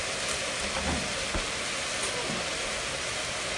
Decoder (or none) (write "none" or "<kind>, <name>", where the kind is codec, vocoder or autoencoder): none